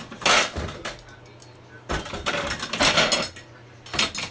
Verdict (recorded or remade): recorded